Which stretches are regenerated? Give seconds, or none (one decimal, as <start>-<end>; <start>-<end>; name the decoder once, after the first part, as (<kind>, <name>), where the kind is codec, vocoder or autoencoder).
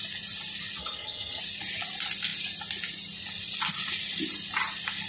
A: 0.8-1.4 (vocoder, HiFi-GAN)